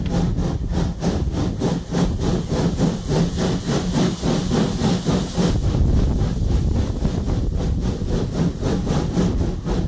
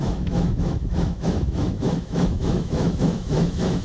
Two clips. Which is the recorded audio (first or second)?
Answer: first